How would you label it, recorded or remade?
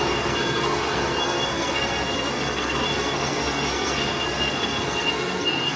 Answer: remade